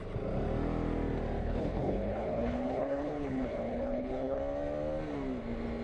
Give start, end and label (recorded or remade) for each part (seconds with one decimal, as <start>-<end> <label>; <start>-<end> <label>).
0.0-1.4 recorded; 1.4-4.4 remade; 4.4-5.8 recorded